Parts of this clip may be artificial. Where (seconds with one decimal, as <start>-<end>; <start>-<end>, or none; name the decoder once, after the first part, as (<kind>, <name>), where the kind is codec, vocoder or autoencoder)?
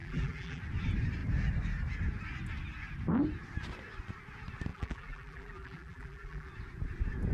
0.0-0.6 (vocoder, BigVGAN v2); 4.7-6.5